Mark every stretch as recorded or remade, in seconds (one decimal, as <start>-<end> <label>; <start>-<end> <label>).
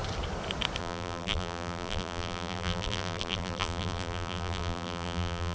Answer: 0.0-0.8 recorded; 0.8-5.5 remade